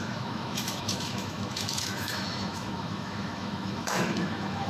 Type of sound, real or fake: fake